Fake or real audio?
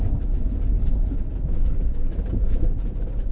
real